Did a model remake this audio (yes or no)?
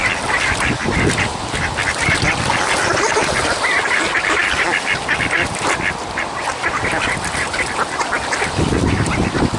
no